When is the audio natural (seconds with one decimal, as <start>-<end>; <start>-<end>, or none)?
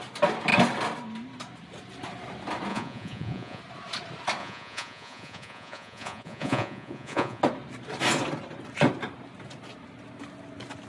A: 0.0-2.7; 3.6-4.4; 7.4-10.9